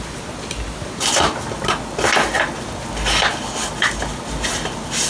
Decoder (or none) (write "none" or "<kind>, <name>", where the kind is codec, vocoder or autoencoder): none